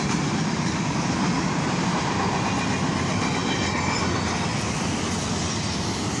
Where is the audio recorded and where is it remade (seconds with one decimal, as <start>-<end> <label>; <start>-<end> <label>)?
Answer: 0.0-6.2 recorded